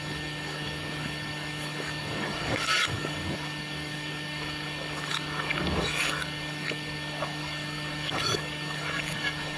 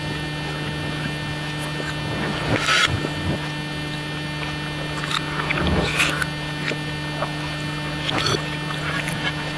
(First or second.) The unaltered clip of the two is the second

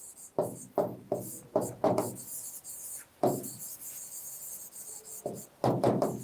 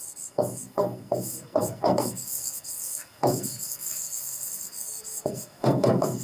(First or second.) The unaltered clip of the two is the first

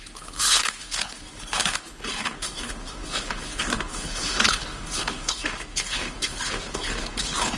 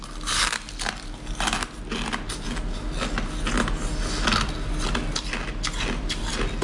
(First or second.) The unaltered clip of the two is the second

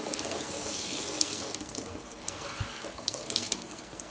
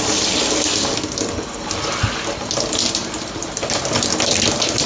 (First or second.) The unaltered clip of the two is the second